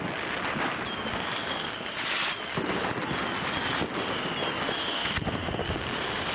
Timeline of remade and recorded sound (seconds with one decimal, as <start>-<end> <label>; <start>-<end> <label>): 0.0-1.1 recorded; 1.1-1.9 remade; 1.9-5.6 recorded; 5.6-6.3 remade